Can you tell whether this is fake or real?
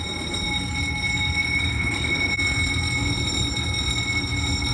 real